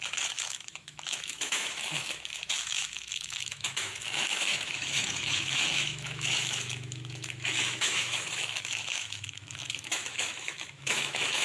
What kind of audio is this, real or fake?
fake